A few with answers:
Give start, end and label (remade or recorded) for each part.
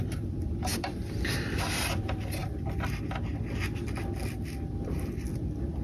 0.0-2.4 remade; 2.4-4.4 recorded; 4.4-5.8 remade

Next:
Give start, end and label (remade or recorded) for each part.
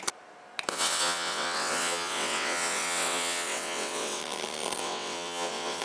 0.0-0.7 recorded; 0.7-4.2 remade; 4.2-4.8 recorded; 4.8-5.8 remade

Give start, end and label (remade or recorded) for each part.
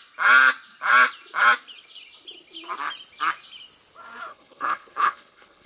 0.0-4.3 recorded; 4.3-5.7 remade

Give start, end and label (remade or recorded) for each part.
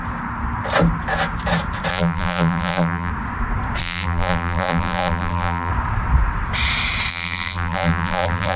0.0-1.9 recorded; 1.9-3.1 remade; 3.1-3.8 recorded; 3.8-5.7 remade; 5.7-7.1 recorded; 7.1-8.6 remade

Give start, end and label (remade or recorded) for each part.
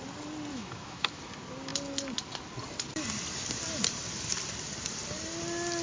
0.0-0.5 recorded; 0.5-1.2 remade; 1.2-5.8 recorded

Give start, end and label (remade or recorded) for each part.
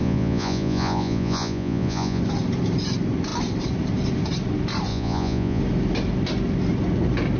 0.0-2.2 remade; 2.2-4.9 recorded; 4.9-5.6 remade; 5.6-7.4 recorded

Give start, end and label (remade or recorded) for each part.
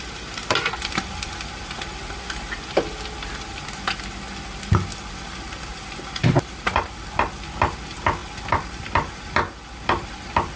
0.0-5.7 recorded; 5.7-6.8 remade; 6.8-10.6 recorded